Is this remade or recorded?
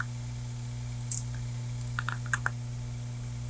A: recorded